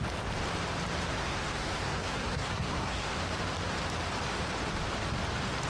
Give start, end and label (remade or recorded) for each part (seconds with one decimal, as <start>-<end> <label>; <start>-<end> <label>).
0.0-1.1 recorded; 1.1-3.2 remade; 3.2-5.7 recorded